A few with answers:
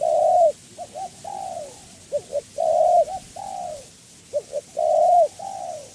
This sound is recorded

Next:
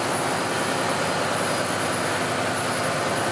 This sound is recorded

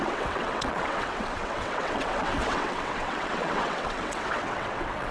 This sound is remade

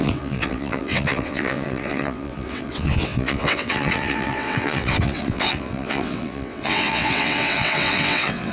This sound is remade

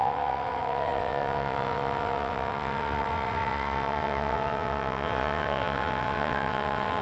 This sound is remade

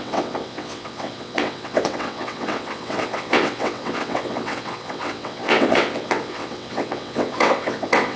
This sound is remade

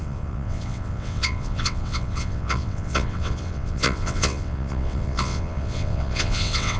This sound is remade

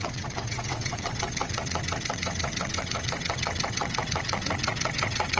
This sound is remade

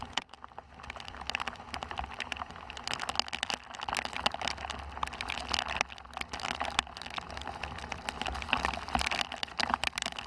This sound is recorded